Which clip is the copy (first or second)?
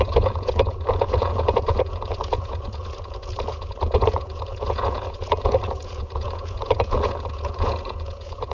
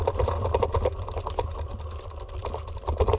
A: first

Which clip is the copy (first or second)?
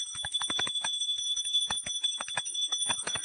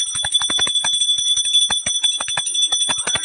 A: first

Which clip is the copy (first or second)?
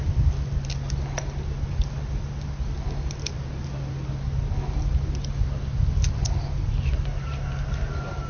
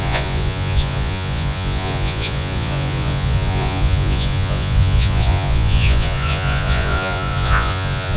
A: second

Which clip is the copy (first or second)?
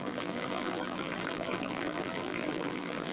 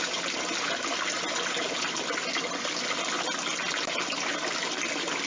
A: first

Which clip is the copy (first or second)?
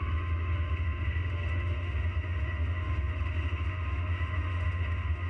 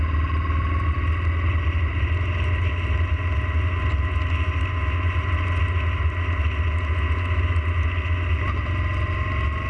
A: first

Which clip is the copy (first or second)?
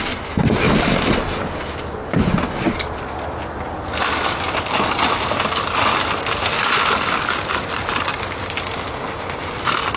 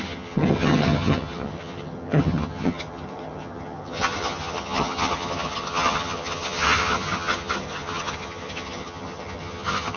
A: second